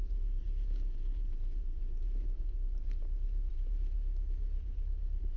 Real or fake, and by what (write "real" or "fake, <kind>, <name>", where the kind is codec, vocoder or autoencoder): fake, vocoder, BigVGAN v2